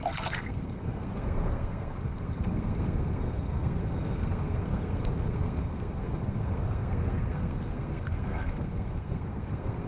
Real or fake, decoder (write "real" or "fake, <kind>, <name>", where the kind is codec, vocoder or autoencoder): fake, codec, SNAC